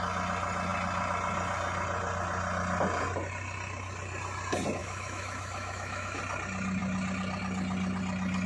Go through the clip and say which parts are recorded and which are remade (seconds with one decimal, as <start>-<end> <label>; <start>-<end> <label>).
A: 0.0-4.8 recorded; 4.8-6.2 remade; 6.2-8.5 recorded